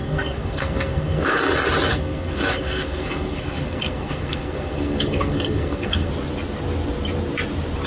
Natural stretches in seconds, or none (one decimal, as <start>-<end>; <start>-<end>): 1.4-1.9; 6.1-7.9